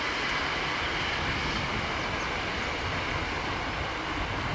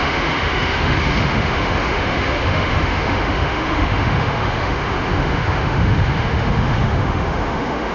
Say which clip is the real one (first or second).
first